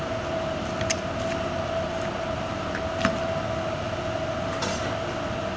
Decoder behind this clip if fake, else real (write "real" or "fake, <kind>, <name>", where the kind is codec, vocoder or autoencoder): real